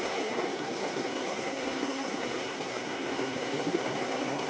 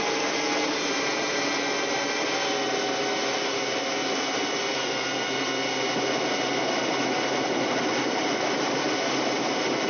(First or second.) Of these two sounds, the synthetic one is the first